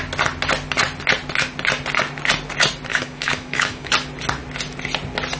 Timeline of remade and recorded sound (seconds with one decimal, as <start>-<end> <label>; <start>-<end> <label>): 0.0-2.9 recorded; 2.9-3.9 remade; 3.9-5.4 recorded